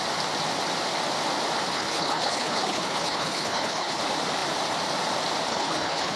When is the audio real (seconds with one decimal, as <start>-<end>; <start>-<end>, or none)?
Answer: 0.0-1.7; 4.0-5.5